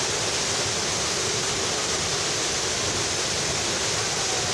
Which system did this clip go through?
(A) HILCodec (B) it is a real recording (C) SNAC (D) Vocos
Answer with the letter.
B